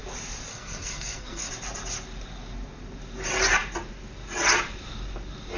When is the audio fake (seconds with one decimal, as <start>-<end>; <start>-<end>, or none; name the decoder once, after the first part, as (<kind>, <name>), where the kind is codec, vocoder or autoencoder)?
0.5-1.5 (codec, SNAC)